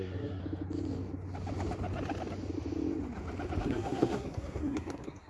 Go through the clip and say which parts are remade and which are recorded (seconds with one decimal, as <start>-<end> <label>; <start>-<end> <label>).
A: 0.0-0.4 remade; 0.4-3.6 recorded; 3.6-5.3 remade